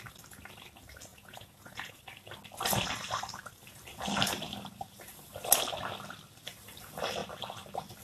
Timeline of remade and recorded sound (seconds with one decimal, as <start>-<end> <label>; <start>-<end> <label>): 0.0-1.1 recorded; 1.1-2.0 remade; 2.0-8.0 recorded